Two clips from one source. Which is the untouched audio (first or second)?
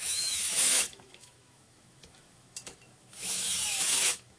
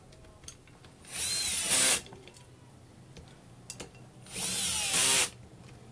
second